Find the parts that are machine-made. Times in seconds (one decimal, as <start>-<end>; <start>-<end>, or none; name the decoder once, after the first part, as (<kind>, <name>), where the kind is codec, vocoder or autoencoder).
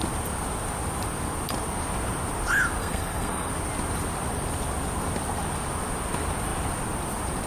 2.8-3.5 (codec, SNAC)